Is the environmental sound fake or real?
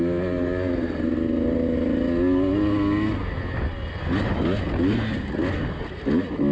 real